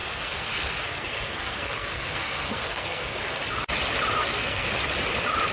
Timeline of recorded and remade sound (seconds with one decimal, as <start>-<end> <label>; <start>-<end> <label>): 0.0-3.3 remade; 3.3-4.2 recorded; 4.2-4.7 remade; 4.7-5.5 recorded